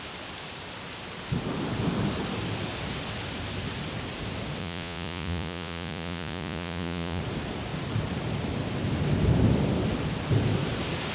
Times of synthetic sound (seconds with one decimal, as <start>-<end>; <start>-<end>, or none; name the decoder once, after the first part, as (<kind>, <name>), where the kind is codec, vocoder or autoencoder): 4.6-7.2 (vocoder, Vocos)